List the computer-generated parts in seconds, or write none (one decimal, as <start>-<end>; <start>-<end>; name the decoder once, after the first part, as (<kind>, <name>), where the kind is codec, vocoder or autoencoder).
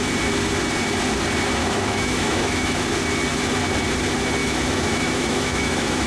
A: 1.6-2.8 (autoencoder, DAC-VAE); 4.4-6.1